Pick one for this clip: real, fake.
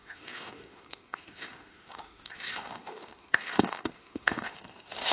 fake